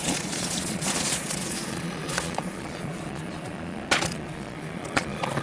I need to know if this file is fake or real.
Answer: fake